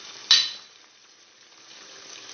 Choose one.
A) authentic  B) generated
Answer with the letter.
A